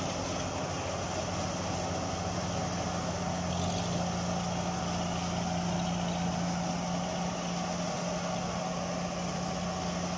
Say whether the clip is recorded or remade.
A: recorded